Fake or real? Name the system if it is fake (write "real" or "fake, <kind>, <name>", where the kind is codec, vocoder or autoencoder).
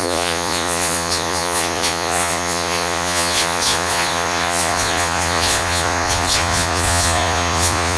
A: fake, vocoder, Vocos